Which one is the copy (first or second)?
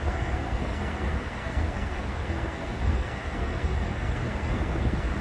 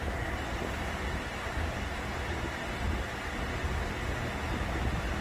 first